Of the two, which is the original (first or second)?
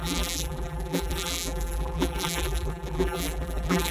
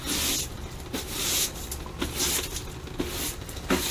second